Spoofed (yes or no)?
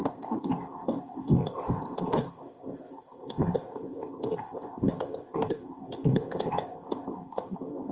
yes